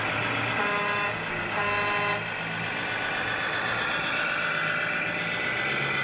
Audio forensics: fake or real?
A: real